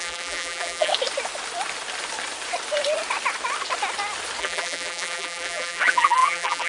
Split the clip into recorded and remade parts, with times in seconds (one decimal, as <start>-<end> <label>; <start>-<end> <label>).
0.0-0.9 remade; 0.9-4.4 recorded; 4.4-6.7 remade

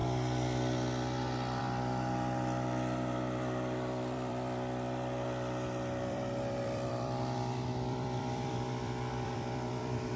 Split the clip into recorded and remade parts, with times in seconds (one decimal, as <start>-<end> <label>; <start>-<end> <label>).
0.0-1.6 recorded; 1.6-10.2 remade

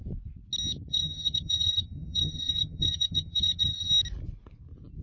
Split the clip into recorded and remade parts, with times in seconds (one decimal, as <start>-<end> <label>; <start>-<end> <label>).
0.0-0.9 recorded; 0.9-3.9 remade; 3.9-5.0 recorded